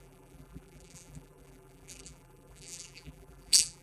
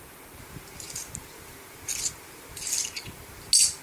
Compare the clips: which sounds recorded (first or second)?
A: second